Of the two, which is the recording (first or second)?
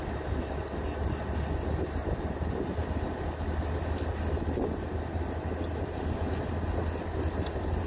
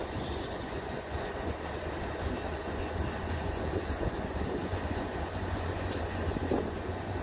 first